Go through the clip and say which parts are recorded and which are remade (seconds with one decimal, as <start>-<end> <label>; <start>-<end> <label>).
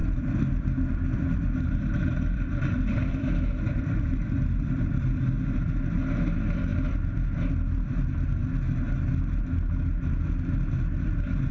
0.0-5.1 remade; 5.1-11.5 recorded